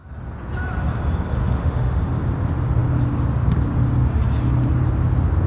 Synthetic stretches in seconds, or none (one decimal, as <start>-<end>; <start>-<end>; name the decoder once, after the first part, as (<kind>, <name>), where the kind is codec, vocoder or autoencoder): 1.4-2.0 (autoencoder, DAC-VAE)